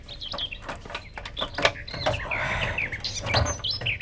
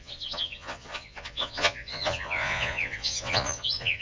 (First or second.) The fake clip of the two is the second